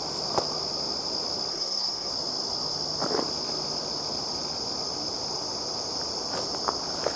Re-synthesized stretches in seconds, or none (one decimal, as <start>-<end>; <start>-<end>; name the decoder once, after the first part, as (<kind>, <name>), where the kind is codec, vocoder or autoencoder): 1.5-2.1 (codec, SNAC)